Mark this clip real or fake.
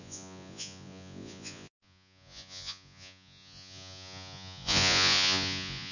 fake